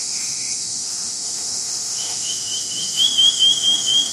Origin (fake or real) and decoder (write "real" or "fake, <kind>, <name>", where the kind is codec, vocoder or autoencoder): fake, autoencoder, DAC-VAE